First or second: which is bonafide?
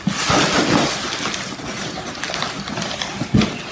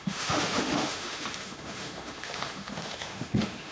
first